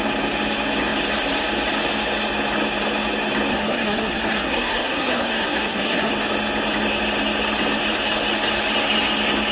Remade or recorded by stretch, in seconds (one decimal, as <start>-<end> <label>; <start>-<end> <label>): 0.0-3.5 recorded; 3.5-6.1 remade; 6.1-9.5 recorded